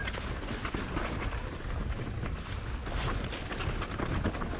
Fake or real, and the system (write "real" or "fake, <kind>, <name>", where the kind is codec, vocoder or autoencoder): real